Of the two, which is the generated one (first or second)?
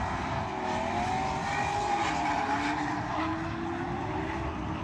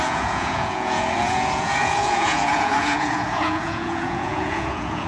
second